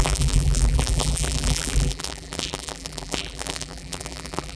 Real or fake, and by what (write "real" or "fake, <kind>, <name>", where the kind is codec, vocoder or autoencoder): fake, vocoder, BigVGAN v2